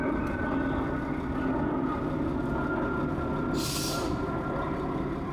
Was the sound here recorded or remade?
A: recorded